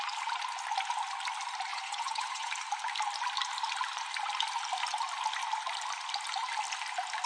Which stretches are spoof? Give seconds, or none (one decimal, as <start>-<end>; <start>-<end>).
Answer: 1.7-2.5